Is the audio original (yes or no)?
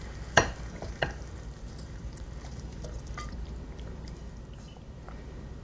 no